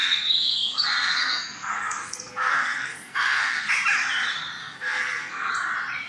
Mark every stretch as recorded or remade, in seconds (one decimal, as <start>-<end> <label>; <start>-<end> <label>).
0.0-3.7 remade; 3.7-4.6 recorded; 4.6-5.5 remade; 5.5-6.1 recorded